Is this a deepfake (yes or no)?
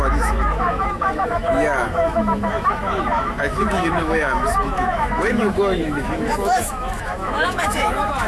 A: yes